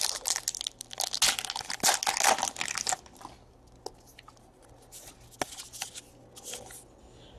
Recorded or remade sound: recorded